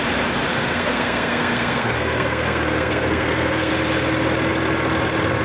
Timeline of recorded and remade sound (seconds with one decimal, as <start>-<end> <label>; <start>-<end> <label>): 0.0-0.5 recorded; 0.5-3.7 remade; 3.7-5.4 recorded